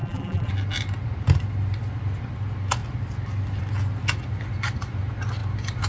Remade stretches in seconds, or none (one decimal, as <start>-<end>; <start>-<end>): 0.0-0.5